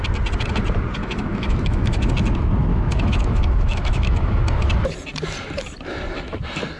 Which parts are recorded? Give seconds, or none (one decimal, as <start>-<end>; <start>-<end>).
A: 0.0-1.0; 2.1-2.7; 4.4-6.8